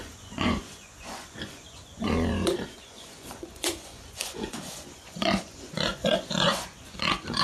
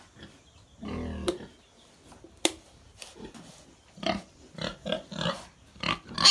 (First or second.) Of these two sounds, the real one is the second